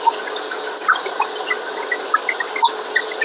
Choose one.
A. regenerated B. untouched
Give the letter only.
B